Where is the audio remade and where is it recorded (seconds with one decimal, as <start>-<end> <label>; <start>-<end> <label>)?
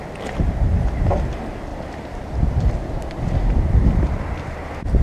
0.0-1.7 recorded; 1.7-4.2 remade; 4.2-5.0 recorded